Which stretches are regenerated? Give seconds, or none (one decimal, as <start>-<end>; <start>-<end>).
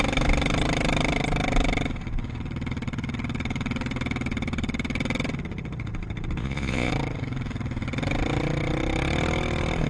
6.4-6.9